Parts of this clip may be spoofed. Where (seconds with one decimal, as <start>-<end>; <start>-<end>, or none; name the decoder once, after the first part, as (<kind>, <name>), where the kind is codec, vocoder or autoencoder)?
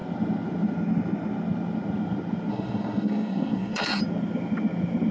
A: 2.5-4.0 (codec, SNAC)